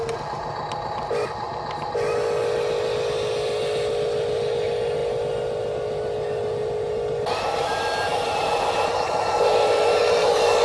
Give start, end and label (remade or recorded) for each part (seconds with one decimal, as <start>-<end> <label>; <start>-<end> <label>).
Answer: 0.0-10.6 recorded

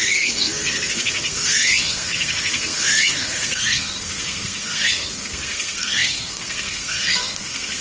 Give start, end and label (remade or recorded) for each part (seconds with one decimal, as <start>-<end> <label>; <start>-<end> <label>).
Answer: 0.0-7.8 remade